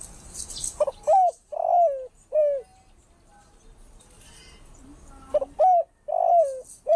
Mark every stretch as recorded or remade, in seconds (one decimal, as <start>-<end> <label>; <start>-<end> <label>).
0.0-7.0 recorded